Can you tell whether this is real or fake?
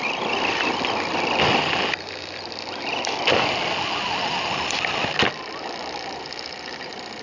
real